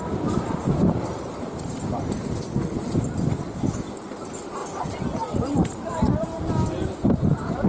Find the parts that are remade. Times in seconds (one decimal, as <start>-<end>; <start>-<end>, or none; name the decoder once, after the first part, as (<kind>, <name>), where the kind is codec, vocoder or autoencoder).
0.6-1.8 (vocoder, BigVGAN v2); 4.6-6.5